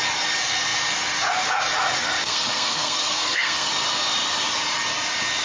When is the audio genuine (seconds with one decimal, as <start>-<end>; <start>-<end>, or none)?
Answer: 0.0-2.2; 3.7-5.4